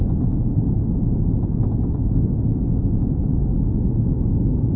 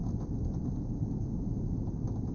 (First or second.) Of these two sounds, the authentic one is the first